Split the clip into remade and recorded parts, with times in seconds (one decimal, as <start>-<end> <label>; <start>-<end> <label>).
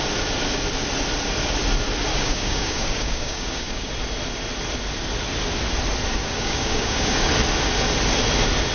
0.0-2.1 recorded; 2.1-3.9 remade; 3.9-6.2 recorded; 6.2-7.3 remade; 7.3-8.7 recorded